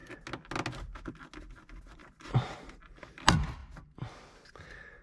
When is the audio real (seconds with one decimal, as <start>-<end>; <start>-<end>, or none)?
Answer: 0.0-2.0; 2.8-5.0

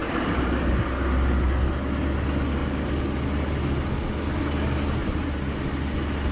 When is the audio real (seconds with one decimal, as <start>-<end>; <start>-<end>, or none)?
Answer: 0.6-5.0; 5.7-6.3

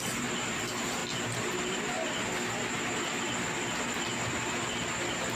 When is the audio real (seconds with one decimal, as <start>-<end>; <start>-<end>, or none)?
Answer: 0.0-5.4

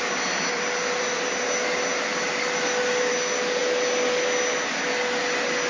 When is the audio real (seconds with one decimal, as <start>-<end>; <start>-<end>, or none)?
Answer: 0.0-5.7

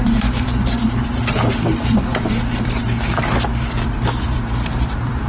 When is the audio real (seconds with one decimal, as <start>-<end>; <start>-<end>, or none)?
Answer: 1.2-1.7

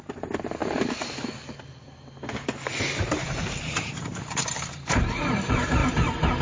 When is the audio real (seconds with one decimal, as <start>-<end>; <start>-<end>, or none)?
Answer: 0.6-3.0; 5.8-6.4

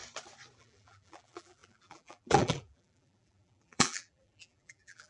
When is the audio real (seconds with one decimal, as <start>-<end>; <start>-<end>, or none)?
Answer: 0.0-0.6